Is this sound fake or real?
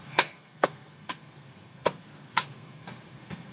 fake